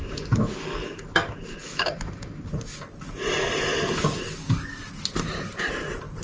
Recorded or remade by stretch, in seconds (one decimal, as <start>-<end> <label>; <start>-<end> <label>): 0.0-6.2 recorded